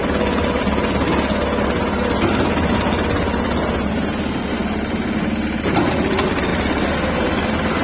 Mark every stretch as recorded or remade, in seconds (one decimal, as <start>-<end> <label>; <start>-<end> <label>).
0.0-7.8 recorded